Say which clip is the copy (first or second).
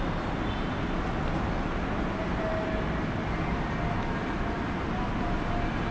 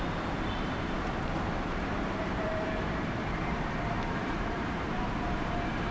second